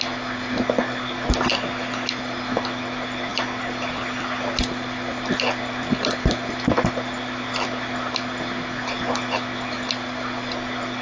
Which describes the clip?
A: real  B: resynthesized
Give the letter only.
A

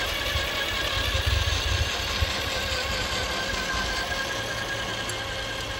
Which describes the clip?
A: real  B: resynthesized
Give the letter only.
A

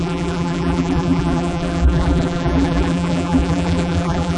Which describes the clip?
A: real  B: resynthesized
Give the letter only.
B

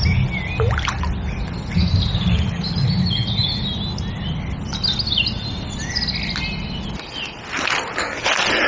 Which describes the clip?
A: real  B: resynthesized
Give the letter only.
A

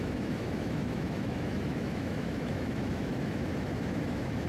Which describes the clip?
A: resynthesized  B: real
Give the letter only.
A